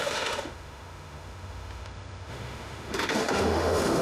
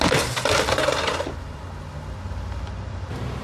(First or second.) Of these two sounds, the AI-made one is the first